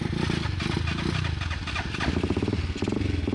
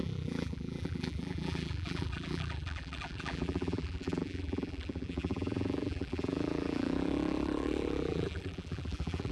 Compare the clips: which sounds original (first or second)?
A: first